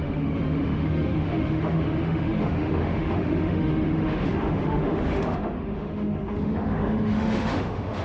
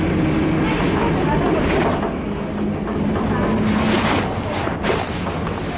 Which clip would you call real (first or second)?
second